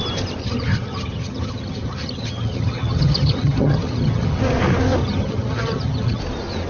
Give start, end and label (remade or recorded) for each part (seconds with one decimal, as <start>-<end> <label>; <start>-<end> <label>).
0.0-0.4 recorded; 0.4-4.4 remade; 4.4-5.0 recorded; 5.0-6.2 remade; 6.2-6.7 recorded

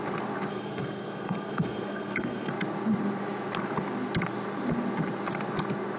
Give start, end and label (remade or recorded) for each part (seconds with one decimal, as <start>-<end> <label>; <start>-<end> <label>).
0.0-0.5 recorded; 0.5-2.5 remade; 2.5-6.0 recorded

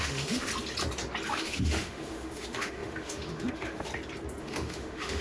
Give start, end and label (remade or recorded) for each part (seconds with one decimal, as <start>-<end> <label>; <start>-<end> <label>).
0.0-0.5 remade; 0.5-1.3 recorded; 1.3-3.9 remade; 3.9-4.4 recorded; 4.4-5.2 remade

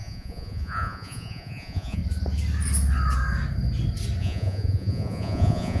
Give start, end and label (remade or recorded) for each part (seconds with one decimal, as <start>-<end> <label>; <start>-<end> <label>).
0.0-2.0 remade; 2.0-4.2 recorded; 4.2-5.8 remade

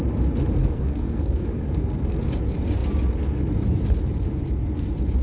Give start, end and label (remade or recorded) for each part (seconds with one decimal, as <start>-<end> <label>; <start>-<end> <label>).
0.0-0.6 recorded; 0.6-2.2 remade; 2.2-5.2 recorded

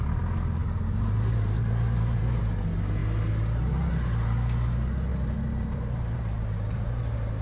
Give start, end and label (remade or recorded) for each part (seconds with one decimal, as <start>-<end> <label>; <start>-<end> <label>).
0.0-0.6 recorded; 0.6-2.4 remade; 2.4-5.1 recorded; 5.1-6.9 remade; 6.9-7.4 recorded